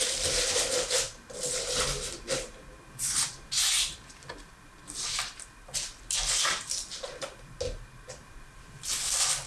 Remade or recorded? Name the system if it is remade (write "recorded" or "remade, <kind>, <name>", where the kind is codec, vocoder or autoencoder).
recorded